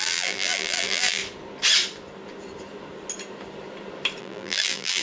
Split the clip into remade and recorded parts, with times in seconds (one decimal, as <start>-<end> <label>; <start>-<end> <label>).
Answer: 0.0-1.2 remade; 1.2-4.2 recorded; 4.2-5.0 remade

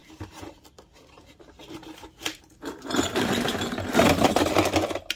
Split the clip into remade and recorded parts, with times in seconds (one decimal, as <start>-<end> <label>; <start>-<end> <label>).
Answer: 0.0-5.2 remade

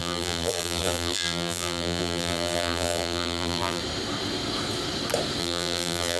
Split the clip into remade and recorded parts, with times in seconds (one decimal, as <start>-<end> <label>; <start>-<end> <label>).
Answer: 0.0-3.8 remade; 3.8-5.4 recorded; 5.4-6.2 remade

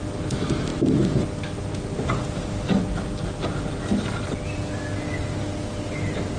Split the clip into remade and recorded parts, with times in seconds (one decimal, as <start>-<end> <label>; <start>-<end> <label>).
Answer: 0.0-6.4 recorded

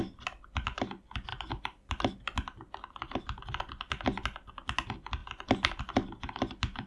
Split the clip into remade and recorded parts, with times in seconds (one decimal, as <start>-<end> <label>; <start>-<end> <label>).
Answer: 0.0-1.3 recorded; 1.3-1.9 remade; 1.9-6.9 recorded

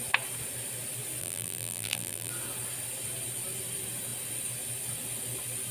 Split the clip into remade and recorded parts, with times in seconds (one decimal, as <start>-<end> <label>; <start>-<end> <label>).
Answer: 0.0-1.2 recorded; 1.2-2.3 remade; 2.3-5.7 recorded

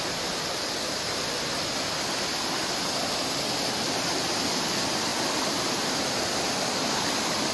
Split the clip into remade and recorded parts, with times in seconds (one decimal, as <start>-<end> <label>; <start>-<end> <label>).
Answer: 0.0-5.1 remade; 5.1-6.6 recorded; 6.6-7.5 remade